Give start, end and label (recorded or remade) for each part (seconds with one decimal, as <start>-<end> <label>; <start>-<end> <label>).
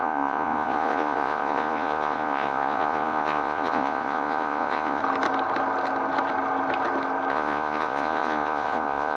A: 0.0-5.0 remade; 5.0-7.3 recorded; 7.3-9.2 remade